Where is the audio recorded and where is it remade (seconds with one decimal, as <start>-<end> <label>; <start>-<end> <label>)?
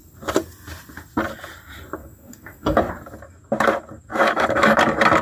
0.0-2.0 recorded; 2.0-2.8 remade; 2.8-4.1 recorded; 4.1-4.8 remade; 4.8-5.2 recorded